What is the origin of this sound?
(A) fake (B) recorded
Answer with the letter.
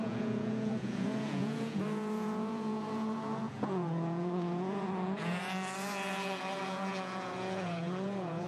A